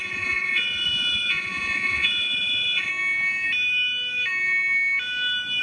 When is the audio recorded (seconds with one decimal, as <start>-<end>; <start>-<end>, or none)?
2.9-5.6